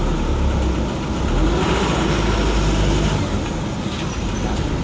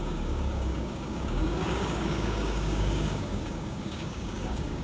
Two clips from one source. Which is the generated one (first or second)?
second